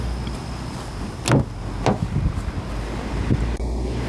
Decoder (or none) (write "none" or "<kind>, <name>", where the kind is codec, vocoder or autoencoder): none